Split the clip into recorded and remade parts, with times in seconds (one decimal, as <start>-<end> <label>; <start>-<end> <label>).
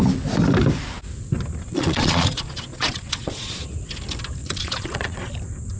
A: 0.0-1.7 recorded; 1.7-3.6 remade; 3.6-4.4 recorded; 4.4-5.3 remade; 5.3-5.8 recorded